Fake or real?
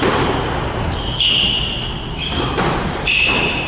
real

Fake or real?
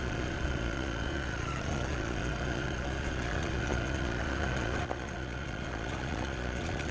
fake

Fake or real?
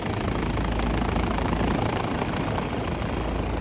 real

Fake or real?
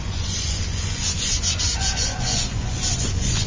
fake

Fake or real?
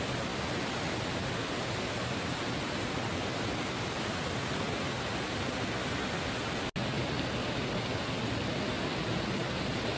real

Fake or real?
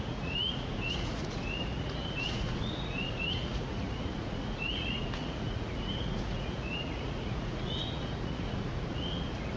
fake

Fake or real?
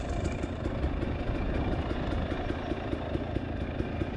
real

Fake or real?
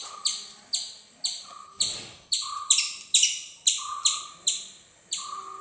real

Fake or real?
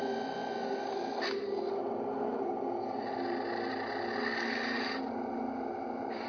real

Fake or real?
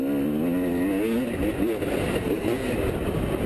real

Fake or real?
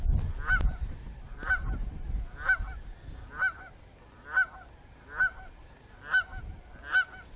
real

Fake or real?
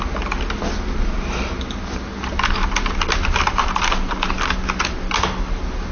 real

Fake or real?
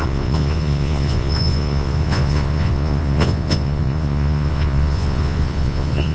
fake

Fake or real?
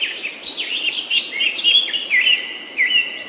real